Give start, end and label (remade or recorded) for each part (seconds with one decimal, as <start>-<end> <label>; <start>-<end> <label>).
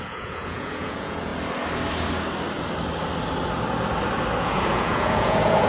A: 0.0-1.3 remade; 1.3-4.4 recorded; 4.4-5.7 remade